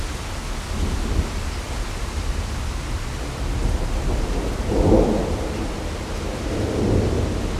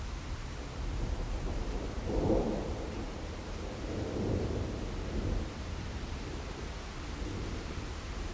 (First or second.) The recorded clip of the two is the first